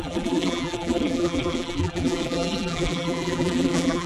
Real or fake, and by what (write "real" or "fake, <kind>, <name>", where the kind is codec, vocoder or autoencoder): fake, vocoder, BigVGAN v2